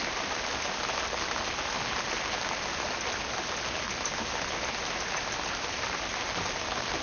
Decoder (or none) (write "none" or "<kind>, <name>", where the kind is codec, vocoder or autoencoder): none